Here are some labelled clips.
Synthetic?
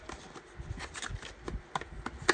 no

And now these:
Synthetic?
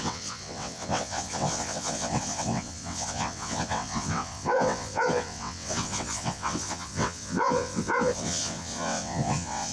yes